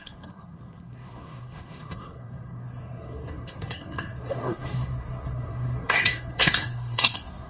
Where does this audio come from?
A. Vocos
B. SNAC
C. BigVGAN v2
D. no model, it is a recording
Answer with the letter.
B